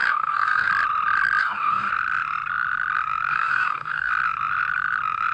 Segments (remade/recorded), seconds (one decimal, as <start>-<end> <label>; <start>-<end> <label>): 0.0-0.7 remade; 0.7-1.4 recorded; 1.4-1.9 remade; 1.9-3.3 recorded; 3.3-4.1 remade; 4.1-5.3 recorded